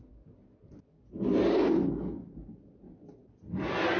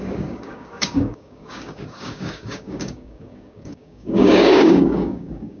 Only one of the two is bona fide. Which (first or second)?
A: first